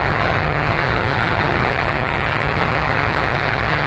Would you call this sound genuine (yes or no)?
no